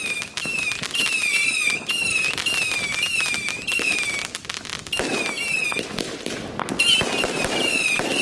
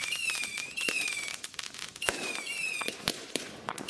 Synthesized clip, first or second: second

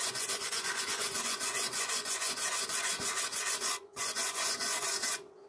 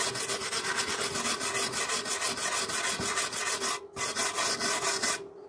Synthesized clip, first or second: first